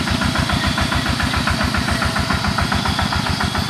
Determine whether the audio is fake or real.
real